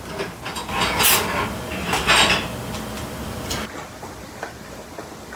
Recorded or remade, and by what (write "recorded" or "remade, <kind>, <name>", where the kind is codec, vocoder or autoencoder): recorded